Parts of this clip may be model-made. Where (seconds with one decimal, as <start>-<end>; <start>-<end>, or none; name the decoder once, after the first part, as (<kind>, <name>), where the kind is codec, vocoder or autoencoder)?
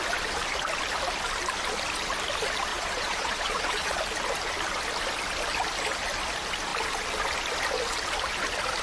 2.7-4.0 (vocoder, Vocos)